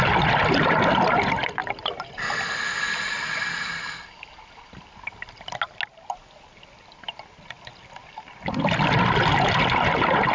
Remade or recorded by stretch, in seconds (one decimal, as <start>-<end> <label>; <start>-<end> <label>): 0.0-10.3 recorded